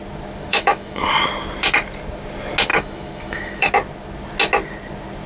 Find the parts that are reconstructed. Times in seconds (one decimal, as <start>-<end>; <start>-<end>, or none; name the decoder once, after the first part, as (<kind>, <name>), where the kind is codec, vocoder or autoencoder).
0.5-1.0 (autoencoder, DAC-VAE); 2.7-3.7